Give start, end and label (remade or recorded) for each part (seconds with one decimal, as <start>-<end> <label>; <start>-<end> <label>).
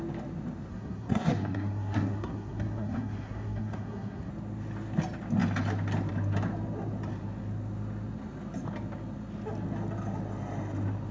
0.0-0.7 recorded; 0.7-4.3 remade; 4.3-11.1 recorded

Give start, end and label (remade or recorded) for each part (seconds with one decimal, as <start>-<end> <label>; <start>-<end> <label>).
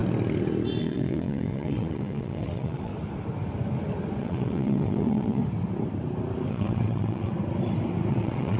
0.0-0.8 recorded; 0.8-2.9 remade; 2.9-4.2 recorded; 4.2-5.4 remade; 5.4-6.5 recorded; 6.5-7.3 remade; 7.3-8.1 recorded; 8.1-8.6 remade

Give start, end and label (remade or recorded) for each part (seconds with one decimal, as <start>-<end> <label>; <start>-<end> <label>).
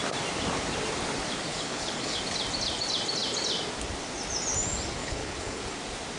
0.0-1.5 recorded; 1.5-2.2 remade; 2.2-5.0 recorded; 5.0-5.6 remade; 5.6-6.2 recorded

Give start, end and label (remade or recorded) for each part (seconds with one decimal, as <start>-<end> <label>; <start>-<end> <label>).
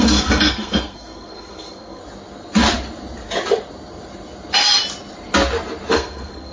0.0-2.0 remade; 2.0-5.9 recorded; 5.9-6.5 remade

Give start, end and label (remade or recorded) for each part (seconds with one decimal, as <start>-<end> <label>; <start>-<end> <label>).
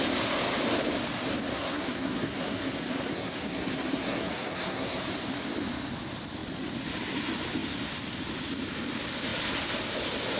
0.0-1.5 recorded; 1.5-5.0 remade; 5.0-10.4 recorded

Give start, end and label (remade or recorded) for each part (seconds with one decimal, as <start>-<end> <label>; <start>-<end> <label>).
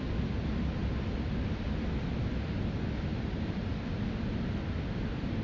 0.0-3.1 recorded; 3.1-4.0 remade; 4.0-5.4 recorded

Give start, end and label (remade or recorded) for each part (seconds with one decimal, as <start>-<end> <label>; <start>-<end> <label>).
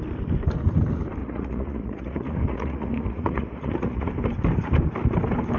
0.0-1.2 recorded; 1.2-4.1 remade; 4.1-5.6 recorded